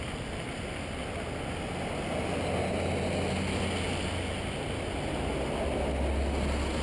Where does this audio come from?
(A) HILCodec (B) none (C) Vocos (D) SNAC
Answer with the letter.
B